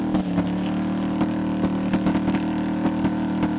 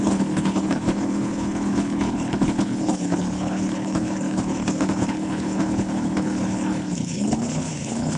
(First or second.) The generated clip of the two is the second